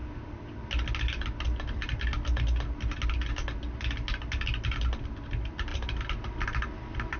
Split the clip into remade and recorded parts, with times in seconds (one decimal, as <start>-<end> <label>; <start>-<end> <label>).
0.0-7.2 recorded